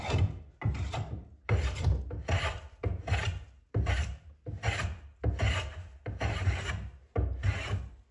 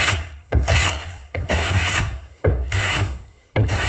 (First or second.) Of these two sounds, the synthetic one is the second